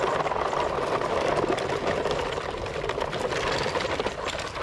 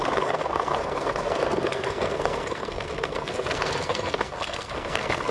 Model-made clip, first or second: second